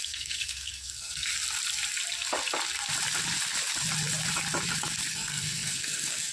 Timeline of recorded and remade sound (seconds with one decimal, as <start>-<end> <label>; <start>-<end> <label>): 0.0-1.3 remade; 1.3-5.1 recorded; 5.1-6.3 remade